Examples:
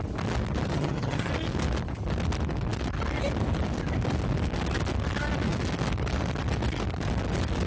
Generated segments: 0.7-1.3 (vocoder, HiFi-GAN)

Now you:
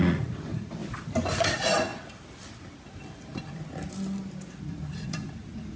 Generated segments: 0.0-0.8 (vocoder, Vocos); 1.4-1.9; 4.6-5.8

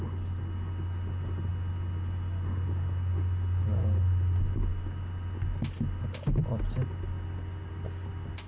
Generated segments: none

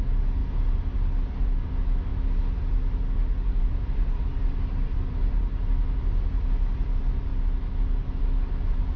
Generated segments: 0.0-0.4 (vocoder, BigVGAN v2); 1.4-2.1; 3.6-7.3; 8.1-9.0